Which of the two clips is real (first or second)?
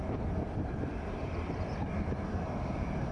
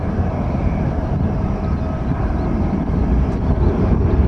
first